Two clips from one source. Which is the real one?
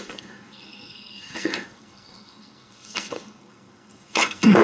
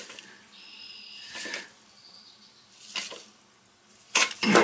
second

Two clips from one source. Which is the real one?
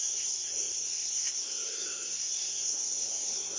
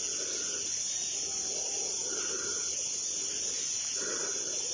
second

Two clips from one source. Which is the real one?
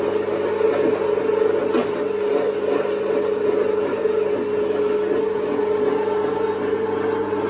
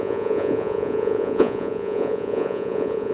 first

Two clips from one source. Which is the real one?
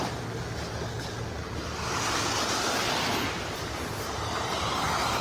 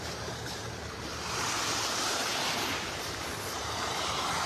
first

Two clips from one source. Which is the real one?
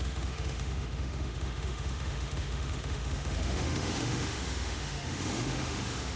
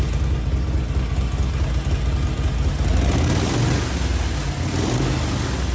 second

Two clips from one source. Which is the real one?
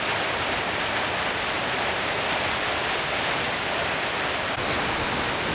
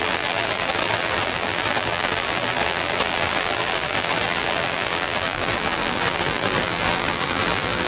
first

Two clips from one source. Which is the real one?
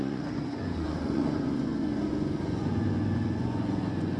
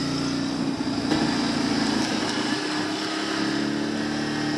second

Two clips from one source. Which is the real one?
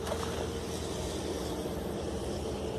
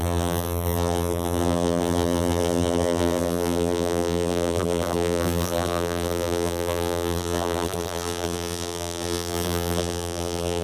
first